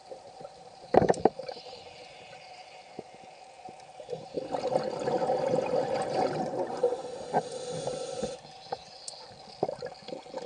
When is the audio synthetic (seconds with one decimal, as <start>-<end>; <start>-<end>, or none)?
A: 0.0-1.0